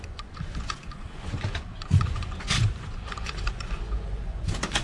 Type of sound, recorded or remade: remade